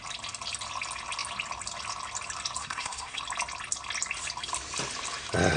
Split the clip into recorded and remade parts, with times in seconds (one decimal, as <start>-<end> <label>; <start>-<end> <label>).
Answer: 0.0-2.6 recorded; 2.6-3.2 remade; 3.2-5.6 recorded